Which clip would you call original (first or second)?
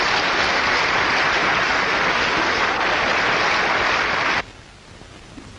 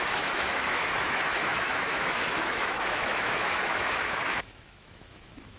first